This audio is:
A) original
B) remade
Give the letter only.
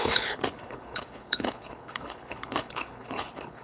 B